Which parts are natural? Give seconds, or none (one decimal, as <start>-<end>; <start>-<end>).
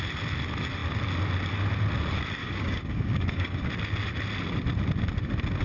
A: 0.0-2.4; 3.7-5.6